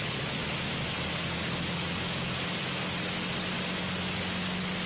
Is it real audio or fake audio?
real